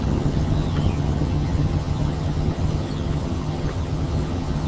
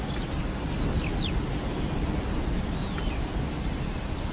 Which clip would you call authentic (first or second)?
second